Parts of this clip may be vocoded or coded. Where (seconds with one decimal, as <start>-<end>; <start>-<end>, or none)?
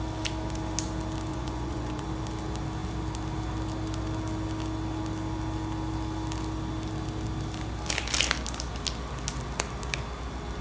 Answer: 1.3-2.0